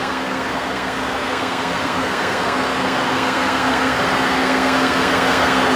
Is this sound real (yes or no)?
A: no